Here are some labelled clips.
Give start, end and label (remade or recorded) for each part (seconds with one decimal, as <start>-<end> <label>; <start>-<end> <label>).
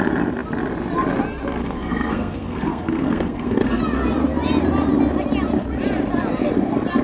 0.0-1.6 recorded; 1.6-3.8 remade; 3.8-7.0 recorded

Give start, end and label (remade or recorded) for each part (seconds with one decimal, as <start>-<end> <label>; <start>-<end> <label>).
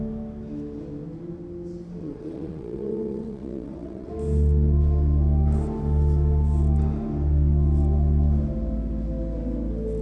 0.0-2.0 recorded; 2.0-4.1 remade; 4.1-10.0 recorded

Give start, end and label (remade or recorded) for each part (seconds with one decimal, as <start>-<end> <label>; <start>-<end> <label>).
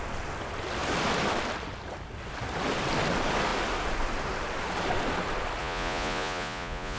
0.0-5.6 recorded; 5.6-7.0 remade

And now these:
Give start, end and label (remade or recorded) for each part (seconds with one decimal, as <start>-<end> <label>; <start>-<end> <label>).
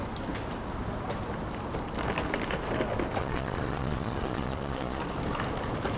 0.0-3.2 recorded; 3.2-5.0 remade; 5.0-6.0 recorded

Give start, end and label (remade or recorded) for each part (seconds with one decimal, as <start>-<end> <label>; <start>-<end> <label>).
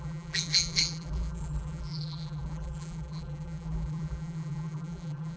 0.0-5.4 remade